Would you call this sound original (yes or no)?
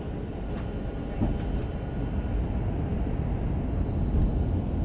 yes